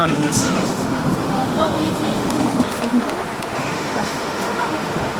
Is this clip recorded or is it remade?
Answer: remade